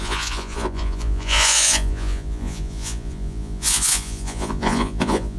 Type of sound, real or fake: fake